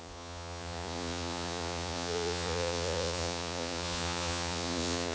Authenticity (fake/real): fake